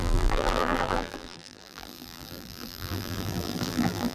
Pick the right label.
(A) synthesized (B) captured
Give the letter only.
A